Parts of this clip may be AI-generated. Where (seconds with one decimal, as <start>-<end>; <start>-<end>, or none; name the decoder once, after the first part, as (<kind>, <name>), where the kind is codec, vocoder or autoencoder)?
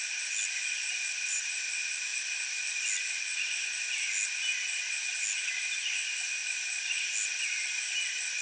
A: 0.6-1.7 (vocoder, BigVGAN v2)